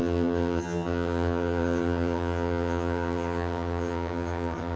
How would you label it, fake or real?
fake